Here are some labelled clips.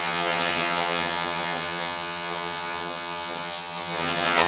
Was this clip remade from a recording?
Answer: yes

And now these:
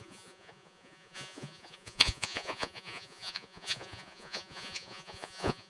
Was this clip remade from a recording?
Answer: yes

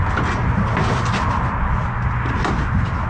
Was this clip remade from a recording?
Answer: no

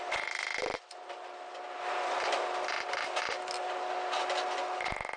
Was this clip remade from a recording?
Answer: no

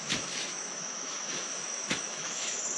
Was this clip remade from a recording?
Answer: yes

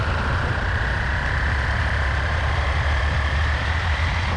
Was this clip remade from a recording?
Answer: yes